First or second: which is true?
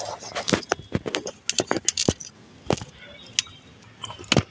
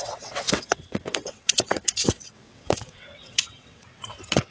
first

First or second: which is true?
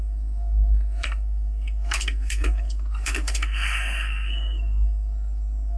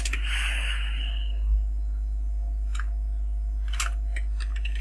second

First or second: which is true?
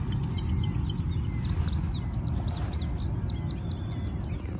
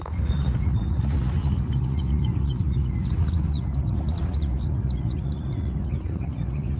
first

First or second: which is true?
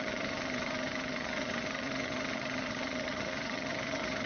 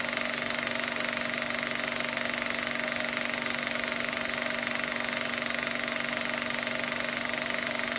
second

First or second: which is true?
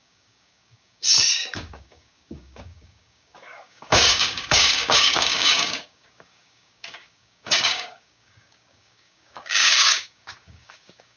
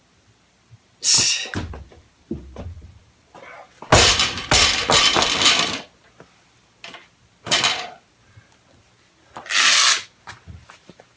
second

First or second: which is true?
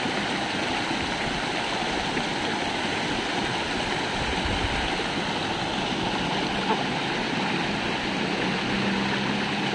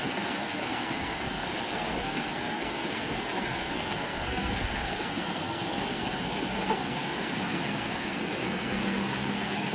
first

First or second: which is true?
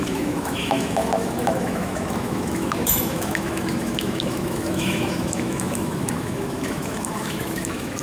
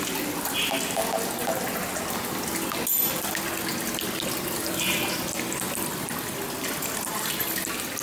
second